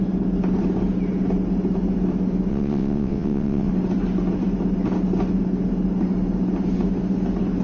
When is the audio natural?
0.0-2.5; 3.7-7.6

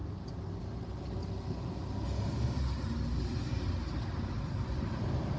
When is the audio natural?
0.0-5.4

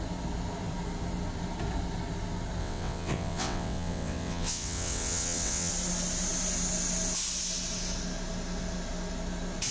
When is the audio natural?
0.0-2.6; 5.7-9.7